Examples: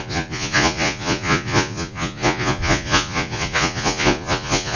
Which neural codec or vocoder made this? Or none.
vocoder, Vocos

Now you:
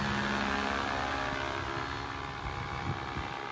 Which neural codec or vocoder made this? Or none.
none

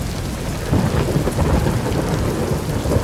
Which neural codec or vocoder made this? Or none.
none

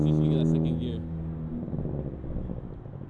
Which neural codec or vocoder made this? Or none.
none